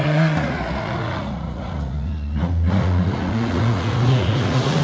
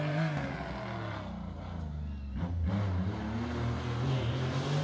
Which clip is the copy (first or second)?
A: first